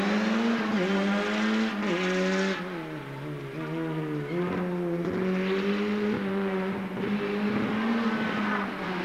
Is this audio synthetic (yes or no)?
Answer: no